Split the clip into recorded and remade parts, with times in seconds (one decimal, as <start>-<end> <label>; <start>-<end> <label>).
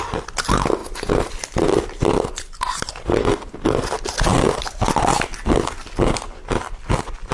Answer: 0.0-7.3 recorded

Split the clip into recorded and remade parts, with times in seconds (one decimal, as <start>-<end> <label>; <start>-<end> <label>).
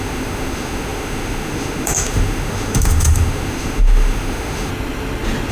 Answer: 0.0-4.7 remade; 4.7-5.5 recorded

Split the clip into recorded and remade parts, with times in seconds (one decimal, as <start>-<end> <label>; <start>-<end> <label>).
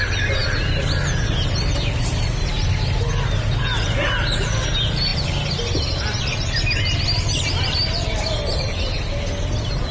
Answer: 0.0-9.9 recorded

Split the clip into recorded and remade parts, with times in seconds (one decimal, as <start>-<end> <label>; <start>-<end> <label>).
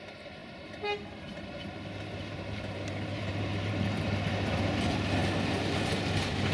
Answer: 0.0-0.4 recorded; 0.4-4.3 remade; 4.3-6.5 recorded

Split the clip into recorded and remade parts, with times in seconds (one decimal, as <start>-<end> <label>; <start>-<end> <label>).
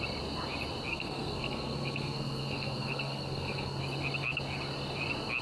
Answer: 0.0-0.9 recorded; 0.9-3.8 remade; 3.8-5.4 recorded